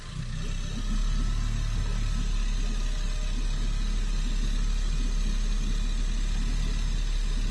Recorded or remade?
recorded